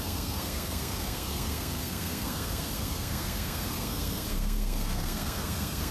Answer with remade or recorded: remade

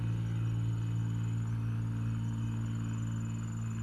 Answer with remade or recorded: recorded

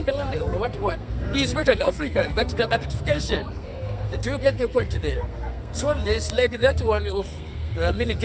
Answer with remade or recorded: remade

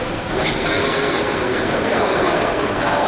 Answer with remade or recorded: remade